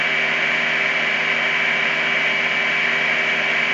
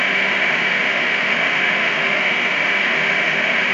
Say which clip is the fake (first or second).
second